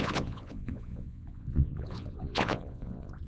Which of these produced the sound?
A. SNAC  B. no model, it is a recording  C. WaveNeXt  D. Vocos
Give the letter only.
D